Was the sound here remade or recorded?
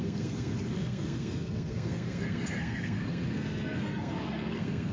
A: remade